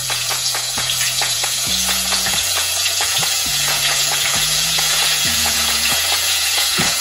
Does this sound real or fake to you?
fake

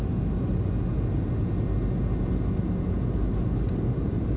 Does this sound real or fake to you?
real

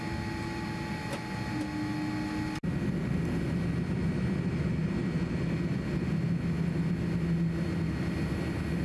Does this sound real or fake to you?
real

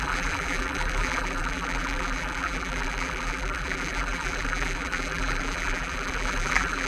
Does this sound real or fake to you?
fake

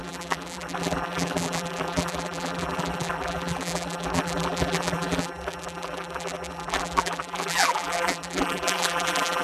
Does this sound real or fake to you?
fake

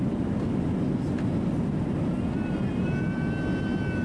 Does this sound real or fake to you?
real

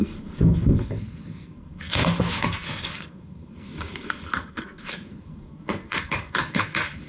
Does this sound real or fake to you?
fake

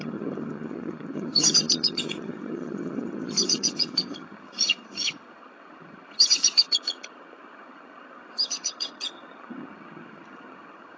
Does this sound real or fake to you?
fake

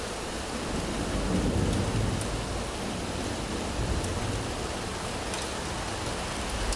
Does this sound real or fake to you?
real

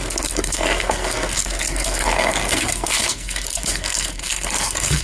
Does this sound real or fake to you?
fake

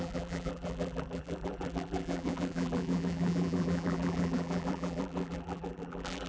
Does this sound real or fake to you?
fake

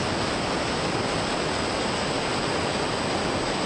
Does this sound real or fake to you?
real